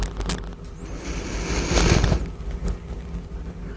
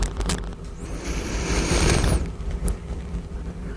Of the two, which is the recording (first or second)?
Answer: first